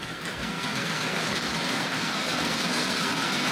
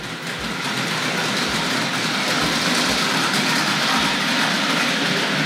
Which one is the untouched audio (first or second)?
second